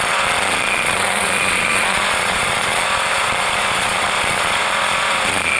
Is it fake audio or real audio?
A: fake